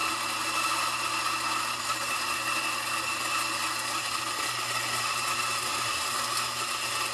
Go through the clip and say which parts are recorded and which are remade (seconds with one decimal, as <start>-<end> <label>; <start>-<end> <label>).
0.0-7.1 recorded